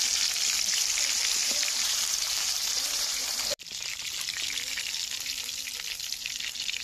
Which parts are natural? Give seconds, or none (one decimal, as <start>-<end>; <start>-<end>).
0.0-1.4; 4.1-6.8